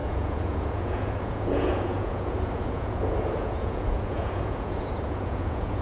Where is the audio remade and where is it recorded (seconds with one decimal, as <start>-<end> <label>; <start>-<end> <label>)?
0.0-5.8 remade